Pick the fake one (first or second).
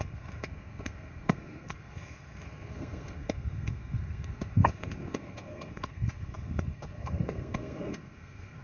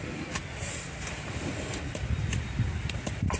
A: first